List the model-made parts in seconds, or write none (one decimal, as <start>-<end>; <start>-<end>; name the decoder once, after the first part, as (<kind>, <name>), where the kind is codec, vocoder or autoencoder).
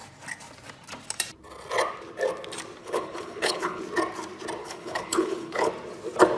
2.8-3.8 (codec, HILCodec); 4.6-5.7